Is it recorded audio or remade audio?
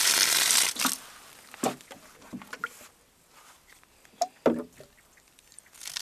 recorded